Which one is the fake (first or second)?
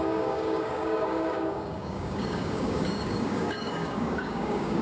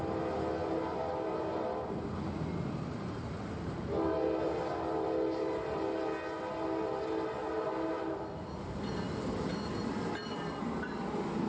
first